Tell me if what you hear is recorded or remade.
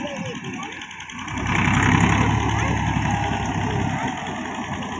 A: recorded